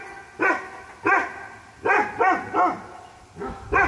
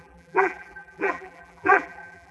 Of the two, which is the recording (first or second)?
first